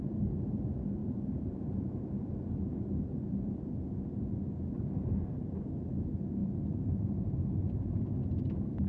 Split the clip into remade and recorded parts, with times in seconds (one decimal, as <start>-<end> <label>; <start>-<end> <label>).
0.0-1.0 recorded; 1.0-2.4 remade; 2.4-5.0 recorded; 5.0-5.6 remade; 5.6-6.4 recorded; 6.4-8.0 remade; 8.0-8.9 recorded